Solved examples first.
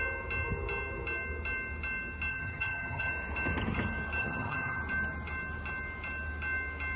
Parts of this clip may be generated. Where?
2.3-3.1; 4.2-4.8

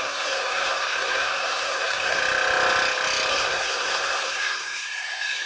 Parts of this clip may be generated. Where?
0.0-2.2; 3.3-5.5

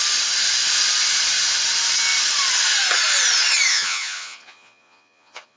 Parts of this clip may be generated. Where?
3.7-5.6